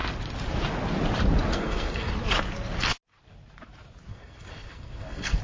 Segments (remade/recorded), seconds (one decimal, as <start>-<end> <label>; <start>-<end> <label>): 0.0-1.5 recorded; 1.5-2.1 remade; 2.1-4.1 recorded; 4.1-5.4 remade